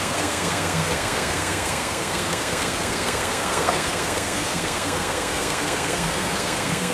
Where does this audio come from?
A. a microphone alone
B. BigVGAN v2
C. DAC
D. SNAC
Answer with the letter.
D